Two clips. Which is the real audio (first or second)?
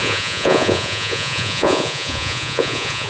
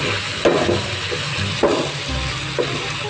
second